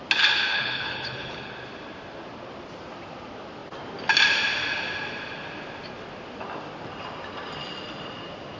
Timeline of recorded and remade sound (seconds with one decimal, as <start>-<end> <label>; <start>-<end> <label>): 0.0-0.5 recorded; 0.5-1.5 remade; 1.5-8.6 recorded

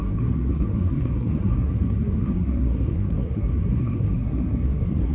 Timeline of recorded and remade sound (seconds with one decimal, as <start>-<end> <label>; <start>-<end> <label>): 0.0-5.1 remade

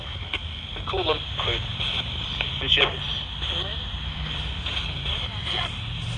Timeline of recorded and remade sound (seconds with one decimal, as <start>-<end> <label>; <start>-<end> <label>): 0.0-6.2 remade

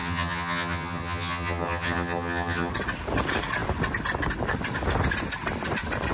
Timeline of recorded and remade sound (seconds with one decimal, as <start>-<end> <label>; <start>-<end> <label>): 0.0-2.7 remade; 2.7-6.1 recorded

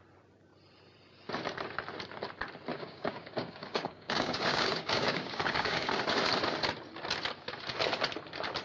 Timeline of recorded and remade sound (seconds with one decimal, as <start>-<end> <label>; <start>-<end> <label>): 0.0-2.7 recorded; 2.7-5.9 remade; 5.9-8.6 recorded

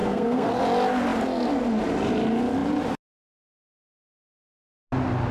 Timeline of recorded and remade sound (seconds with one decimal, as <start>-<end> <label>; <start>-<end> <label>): 0.0-0.6 remade; 0.6-5.3 recorded